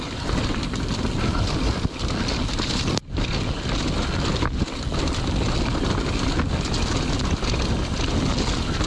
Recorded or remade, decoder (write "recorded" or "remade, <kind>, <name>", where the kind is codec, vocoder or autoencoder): recorded